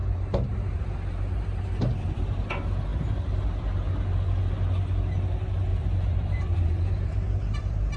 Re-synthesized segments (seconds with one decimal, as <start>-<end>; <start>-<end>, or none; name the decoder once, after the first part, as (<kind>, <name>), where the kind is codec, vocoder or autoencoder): 0.0-2.5 (vocoder, BigVGAN v2); 5.7-8.0